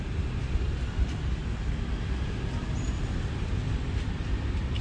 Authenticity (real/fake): real